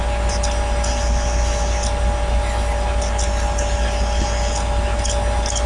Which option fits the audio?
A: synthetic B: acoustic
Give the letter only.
B